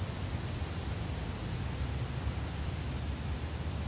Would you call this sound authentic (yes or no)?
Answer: yes